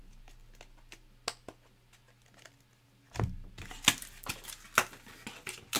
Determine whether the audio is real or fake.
real